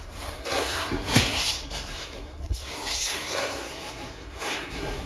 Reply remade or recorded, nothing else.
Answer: remade